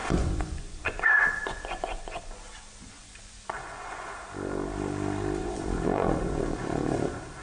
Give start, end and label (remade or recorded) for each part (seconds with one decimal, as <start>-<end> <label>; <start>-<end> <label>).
0.0-4.1 remade; 4.1-5.4 recorded; 5.4-7.4 remade